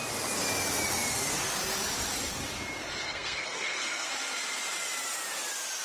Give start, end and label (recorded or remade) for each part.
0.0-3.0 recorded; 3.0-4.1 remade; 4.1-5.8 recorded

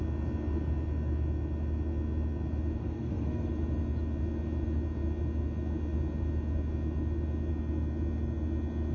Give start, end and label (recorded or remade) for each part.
0.0-2.8 recorded; 2.8-3.5 remade; 3.5-8.9 recorded

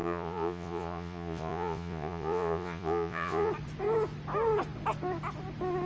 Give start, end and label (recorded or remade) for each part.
0.0-3.5 remade; 3.5-5.9 recorded

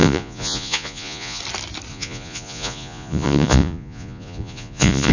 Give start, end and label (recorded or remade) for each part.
0.0-1.4 remade; 1.4-1.9 recorded; 1.9-5.1 remade

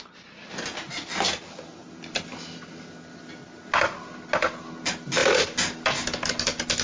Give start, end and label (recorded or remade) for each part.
0.0-6.8 recorded

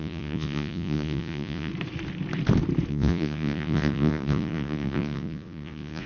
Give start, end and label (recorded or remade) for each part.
0.0-1.7 remade; 1.7-2.9 recorded; 2.9-6.1 remade

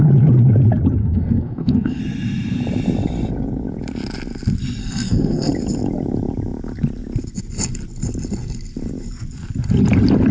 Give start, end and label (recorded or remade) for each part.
0.0-1.0 recorded; 1.0-2.0 remade; 2.0-4.8 recorded; 4.8-5.5 remade; 5.5-10.3 recorded

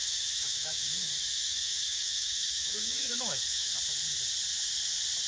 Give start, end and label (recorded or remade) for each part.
0.0-3.7 remade; 3.7-5.3 recorded